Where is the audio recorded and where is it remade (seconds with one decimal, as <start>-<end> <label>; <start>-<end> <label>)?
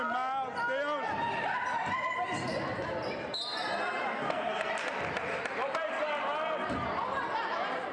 0.0-4.1 recorded; 4.1-4.7 remade; 4.7-7.9 recorded